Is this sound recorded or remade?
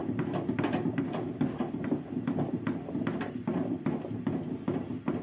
remade